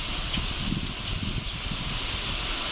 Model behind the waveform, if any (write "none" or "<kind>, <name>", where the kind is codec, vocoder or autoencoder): none